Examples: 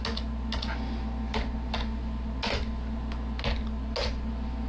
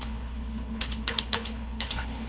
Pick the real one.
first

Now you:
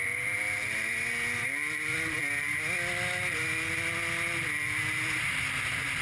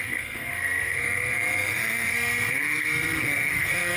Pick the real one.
first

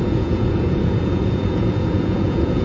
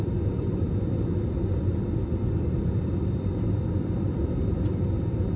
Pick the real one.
second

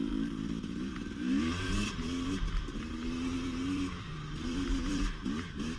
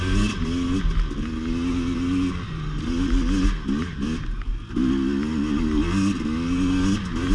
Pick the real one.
second